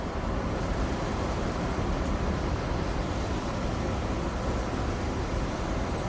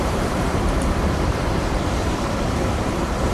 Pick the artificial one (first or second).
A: second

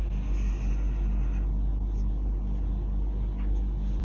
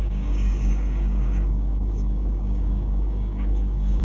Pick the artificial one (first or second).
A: second